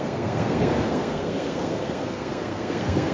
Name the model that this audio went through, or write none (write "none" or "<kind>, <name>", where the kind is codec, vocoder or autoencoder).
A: codec, SNAC